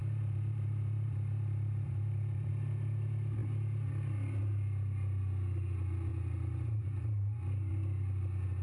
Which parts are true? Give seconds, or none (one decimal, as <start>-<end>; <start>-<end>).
2.5-8.6